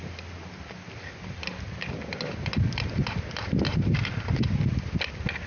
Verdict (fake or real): real